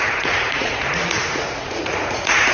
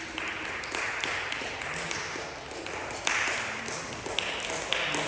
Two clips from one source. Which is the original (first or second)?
second